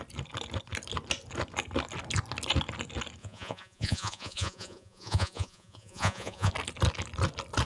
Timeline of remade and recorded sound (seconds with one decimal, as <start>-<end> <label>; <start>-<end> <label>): 0.0-3.2 recorded; 3.2-6.5 remade; 6.5-7.7 recorded